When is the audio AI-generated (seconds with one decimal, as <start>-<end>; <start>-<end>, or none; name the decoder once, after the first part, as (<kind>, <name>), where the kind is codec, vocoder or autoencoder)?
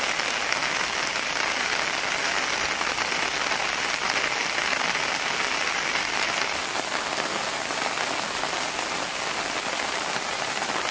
none